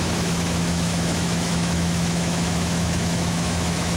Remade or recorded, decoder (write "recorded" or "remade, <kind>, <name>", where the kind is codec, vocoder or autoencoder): remade, autoencoder, DAC-VAE